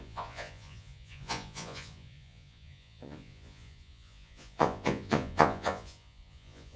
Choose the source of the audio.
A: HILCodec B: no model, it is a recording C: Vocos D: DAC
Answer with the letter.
C